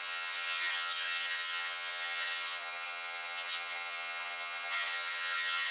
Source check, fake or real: fake